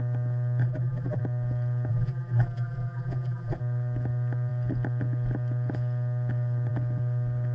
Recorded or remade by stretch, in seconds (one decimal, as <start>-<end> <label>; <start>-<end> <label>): 0.0-0.6 recorded; 0.6-1.2 remade; 1.2-1.9 recorded; 1.9-3.6 remade; 3.6-7.5 recorded